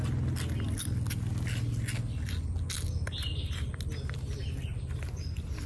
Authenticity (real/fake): real